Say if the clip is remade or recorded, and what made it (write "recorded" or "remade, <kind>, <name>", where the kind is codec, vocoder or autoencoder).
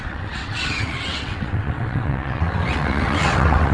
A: remade, vocoder, WaveNeXt